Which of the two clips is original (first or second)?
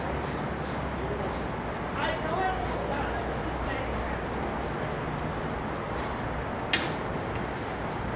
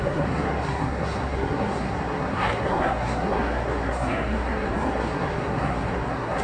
first